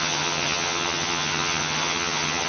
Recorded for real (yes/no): no